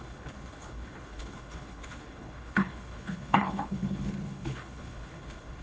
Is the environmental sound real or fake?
fake